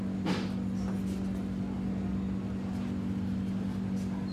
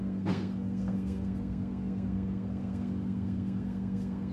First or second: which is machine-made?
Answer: second